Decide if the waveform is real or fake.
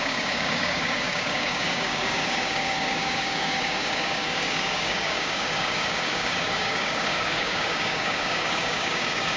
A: fake